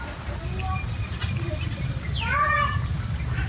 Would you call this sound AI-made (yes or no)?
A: no